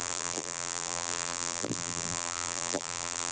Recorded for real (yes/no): no